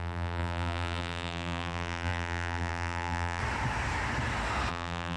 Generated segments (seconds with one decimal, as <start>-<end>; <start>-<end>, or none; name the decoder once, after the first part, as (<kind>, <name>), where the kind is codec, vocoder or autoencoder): 0.0-3.4 (vocoder, BigVGAN v2); 4.7-5.2